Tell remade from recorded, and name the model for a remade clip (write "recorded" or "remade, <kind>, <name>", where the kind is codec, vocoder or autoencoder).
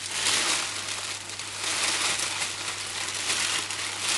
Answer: recorded